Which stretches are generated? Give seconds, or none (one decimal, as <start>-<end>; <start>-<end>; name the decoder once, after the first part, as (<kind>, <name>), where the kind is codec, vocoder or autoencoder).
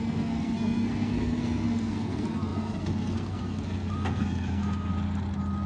0.0-4.9 (codec, SNAC)